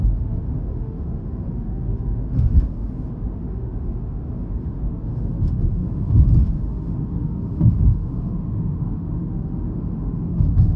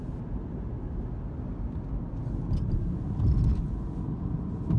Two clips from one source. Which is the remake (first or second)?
first